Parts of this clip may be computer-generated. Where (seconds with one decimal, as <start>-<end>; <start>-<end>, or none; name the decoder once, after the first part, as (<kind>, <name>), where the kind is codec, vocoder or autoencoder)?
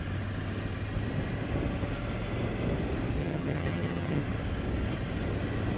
3.2-4.2 (vocoder, HiFi-GAN)